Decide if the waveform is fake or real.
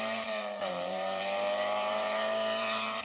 fake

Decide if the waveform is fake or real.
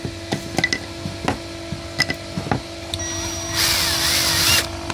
real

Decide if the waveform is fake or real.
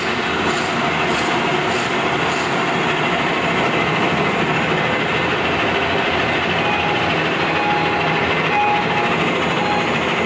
real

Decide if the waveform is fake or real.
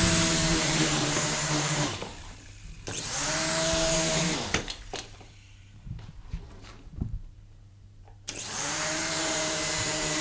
fake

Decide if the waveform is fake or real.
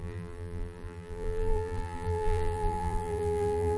fake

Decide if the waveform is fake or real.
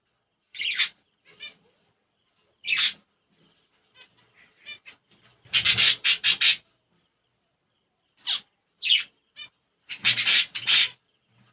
fake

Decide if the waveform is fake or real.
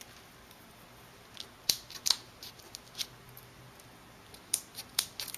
real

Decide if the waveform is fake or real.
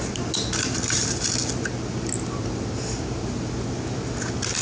real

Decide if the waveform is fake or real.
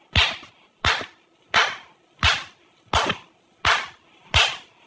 real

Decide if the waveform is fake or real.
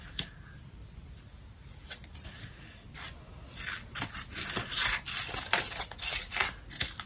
real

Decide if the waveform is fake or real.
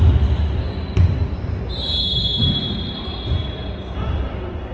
real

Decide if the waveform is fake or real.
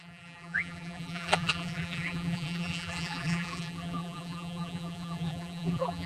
fake